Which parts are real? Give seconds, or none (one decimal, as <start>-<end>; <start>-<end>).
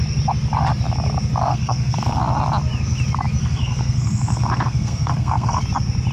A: 0.0-1.5; 2.2-3.4; 5.6-6.1